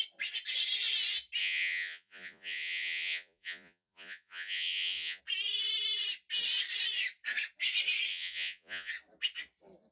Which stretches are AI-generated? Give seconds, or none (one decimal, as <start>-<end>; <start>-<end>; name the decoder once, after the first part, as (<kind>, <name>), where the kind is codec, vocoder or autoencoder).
1.4-5.2 (vocoder, Vocos); 8.1-8.9